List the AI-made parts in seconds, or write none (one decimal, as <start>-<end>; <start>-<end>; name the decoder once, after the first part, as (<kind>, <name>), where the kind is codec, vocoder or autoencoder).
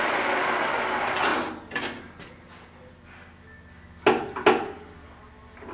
none